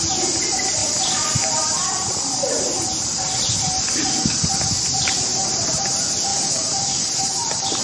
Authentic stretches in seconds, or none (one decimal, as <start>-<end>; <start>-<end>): 0.8-5.5